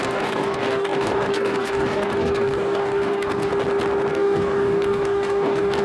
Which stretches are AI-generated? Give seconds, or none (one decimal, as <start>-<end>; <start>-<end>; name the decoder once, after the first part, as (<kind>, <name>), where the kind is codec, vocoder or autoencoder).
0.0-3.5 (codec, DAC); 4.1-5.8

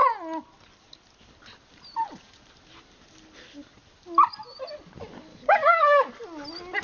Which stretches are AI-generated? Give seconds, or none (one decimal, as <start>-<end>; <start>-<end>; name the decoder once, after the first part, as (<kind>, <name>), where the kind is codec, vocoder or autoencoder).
5.3-6.1 (codec, DAC)

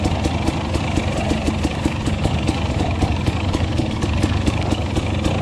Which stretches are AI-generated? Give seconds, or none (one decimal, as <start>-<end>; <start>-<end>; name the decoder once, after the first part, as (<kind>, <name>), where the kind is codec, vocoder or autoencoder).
1.7-4.9 (codec, DAC)